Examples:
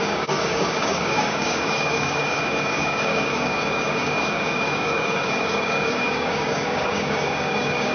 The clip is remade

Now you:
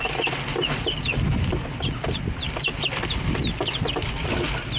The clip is recorded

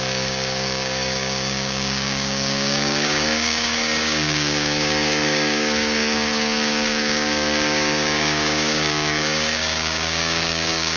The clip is remade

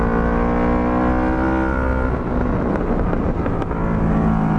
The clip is recorded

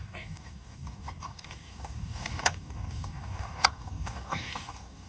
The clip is remade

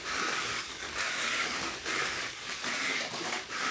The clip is remade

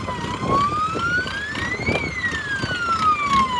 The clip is recorded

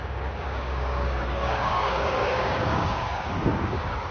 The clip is remade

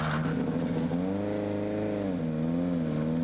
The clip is recorded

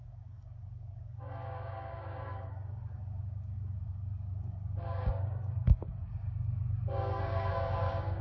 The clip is remade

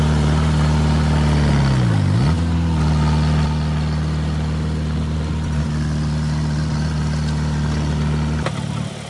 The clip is recorded